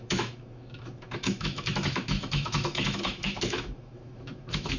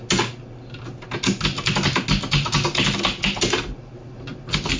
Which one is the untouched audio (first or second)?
second